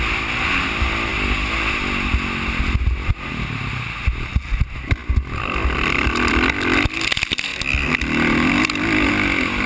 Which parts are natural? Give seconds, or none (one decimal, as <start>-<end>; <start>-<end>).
0.0-9.7